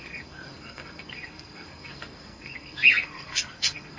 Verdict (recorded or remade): remade